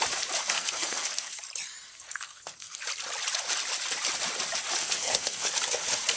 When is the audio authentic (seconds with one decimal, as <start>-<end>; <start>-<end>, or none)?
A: 0.0-0.4; 1.4-1.9; 2.8-4.8; 5.5-6.2